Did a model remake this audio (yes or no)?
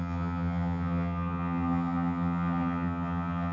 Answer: yes